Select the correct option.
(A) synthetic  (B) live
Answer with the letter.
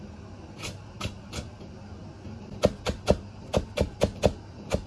B